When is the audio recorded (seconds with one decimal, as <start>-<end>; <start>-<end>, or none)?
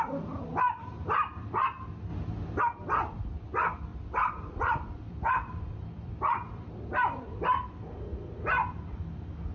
0.0-3.9; 8.0-9.5